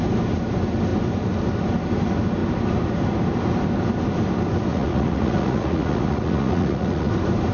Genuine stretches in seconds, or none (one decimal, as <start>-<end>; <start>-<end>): 0.0-4.7; 7.1-7.5